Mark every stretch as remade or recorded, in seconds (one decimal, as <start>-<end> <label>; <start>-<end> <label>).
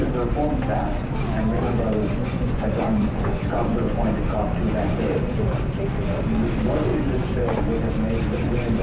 0.0-2.2 recorded; 2.2-4.1 remade; 4.1-6.9 recorded; 6.9-7.6 remade; 7.6-8.8 recorded